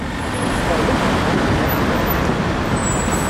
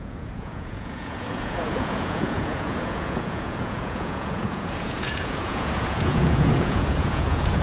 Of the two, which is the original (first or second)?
first